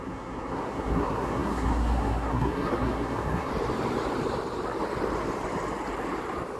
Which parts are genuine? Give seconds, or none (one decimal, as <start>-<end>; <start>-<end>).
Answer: 3.5-6.6